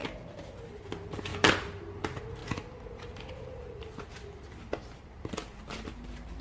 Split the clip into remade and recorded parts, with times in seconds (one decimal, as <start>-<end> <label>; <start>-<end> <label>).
0.0-0.8 remade; 0.8-1.3 recorded; 1.3-2.0 remade; 2.0-4.2 recorded; 4.2-5.2 remade; 5.2-6.4 recorded